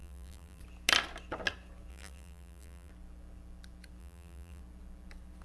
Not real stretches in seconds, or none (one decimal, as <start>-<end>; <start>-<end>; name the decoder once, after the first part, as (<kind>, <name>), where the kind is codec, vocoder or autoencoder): 0.0-0.6 (vocoder, BigVGAN v2); 1.9-2.9; 4.0-4.6

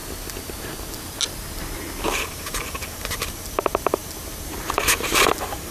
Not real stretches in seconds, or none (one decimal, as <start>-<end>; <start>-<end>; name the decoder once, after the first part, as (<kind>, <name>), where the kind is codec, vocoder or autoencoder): 2.0-5.7 (vocoder, BigVGAN v2)

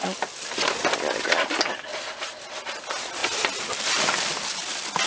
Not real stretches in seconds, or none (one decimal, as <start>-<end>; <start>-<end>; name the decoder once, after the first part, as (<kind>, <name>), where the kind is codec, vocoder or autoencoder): none